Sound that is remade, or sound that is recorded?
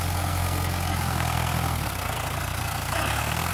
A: remade